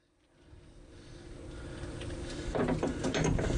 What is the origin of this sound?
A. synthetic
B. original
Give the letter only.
B